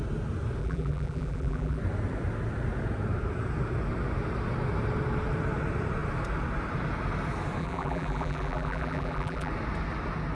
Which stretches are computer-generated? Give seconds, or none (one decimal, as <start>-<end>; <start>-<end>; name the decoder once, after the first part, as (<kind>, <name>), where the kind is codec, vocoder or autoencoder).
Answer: 0.6-1.8 (vocoder, BigVGAN v2); 7.6-9.5